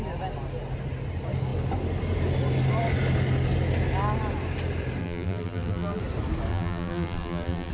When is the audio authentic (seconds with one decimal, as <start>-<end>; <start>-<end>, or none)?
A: 0.0-5.0; 6.0-6.5